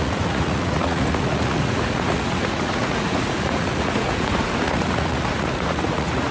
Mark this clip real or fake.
fake